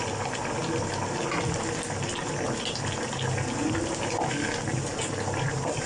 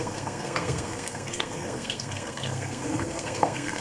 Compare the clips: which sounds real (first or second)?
first